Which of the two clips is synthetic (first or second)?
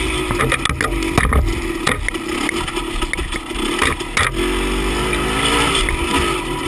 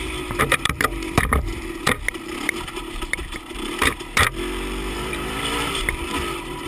second